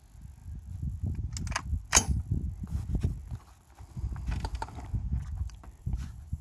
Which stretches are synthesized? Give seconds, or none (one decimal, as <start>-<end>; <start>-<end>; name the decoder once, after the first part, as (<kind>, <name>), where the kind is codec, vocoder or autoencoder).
5.8-6.4 (vocoder, Vocos)